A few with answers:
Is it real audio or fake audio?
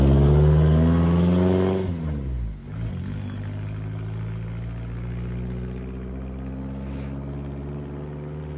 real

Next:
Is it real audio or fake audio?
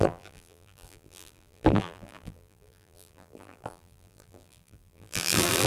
fake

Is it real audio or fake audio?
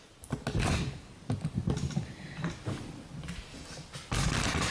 real